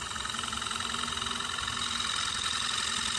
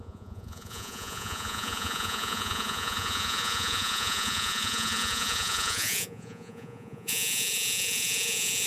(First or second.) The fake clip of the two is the second